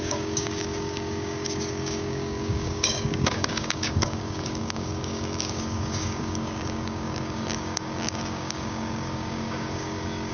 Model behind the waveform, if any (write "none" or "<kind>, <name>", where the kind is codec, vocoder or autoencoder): codec, DAC